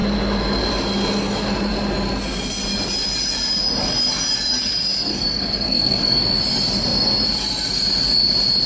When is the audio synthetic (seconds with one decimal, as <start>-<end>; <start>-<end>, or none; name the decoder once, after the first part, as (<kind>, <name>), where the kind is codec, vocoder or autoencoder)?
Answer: 5.1-6.2 (codec, SNAC)